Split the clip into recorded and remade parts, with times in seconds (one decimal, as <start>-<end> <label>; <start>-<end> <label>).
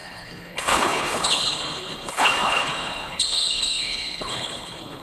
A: 0.0-5.0 remade